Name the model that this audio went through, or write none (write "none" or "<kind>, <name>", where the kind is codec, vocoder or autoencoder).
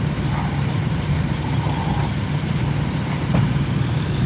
vocoder, BigVGAN v2